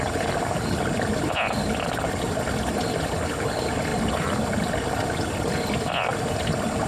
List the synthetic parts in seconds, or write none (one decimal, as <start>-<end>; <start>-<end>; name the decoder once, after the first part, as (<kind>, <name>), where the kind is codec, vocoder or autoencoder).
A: none